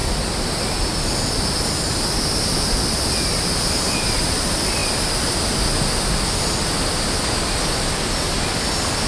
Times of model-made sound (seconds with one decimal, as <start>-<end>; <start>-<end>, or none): none